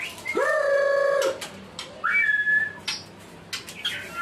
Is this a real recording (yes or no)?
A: yes